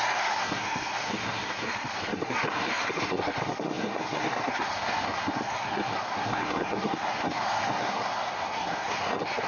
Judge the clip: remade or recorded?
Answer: remade